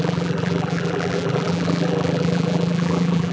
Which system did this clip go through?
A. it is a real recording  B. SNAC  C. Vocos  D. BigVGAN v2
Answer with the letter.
D